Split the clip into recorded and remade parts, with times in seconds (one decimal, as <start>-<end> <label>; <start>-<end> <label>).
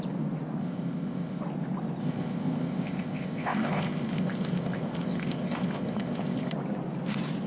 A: 0.0-0.6 recorded; 0.6-1.4 remade; 1.4-2.0 recorded; 2.0-6.5 remade; 6.5-7.5 recorded